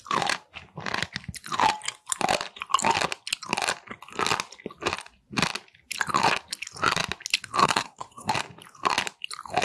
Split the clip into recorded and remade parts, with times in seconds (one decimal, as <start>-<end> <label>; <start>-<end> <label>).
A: 0.0-7.6 recorded; 7.6-8.3 remade; 8.3-9.6 recorded